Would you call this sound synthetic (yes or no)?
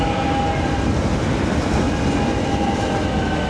no